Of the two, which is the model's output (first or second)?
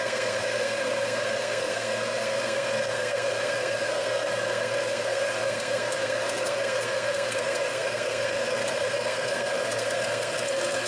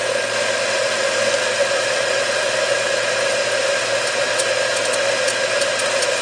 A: first